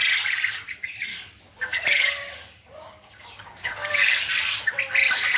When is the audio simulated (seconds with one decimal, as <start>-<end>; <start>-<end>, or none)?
1.1-4.3